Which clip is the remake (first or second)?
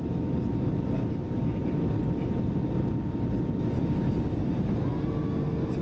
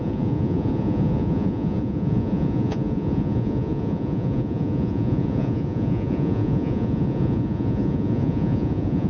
second